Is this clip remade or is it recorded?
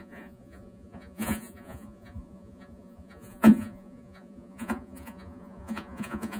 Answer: remade